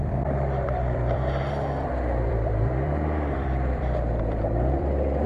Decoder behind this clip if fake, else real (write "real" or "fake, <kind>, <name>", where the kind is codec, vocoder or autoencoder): fake, vocoder, BigVGAN v2